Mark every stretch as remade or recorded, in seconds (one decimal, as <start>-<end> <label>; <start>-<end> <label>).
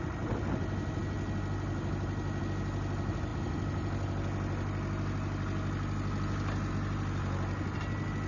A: 0.0-8.3 recorded